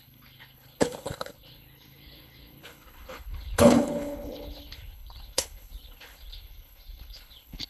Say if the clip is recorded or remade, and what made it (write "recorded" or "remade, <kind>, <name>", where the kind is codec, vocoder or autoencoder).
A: remade, codec, HILCodec